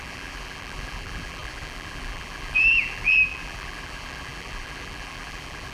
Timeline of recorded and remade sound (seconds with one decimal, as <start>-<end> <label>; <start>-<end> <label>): 0.0-5.7 remade